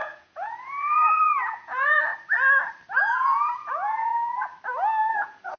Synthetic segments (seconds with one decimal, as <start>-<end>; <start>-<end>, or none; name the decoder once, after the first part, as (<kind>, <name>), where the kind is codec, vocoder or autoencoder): 0.0-2.1 (vocoder, Vocos); 3.0-4.5; 5.1-5.6